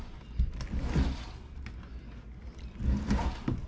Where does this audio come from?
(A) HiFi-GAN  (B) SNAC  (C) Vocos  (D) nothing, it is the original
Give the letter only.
D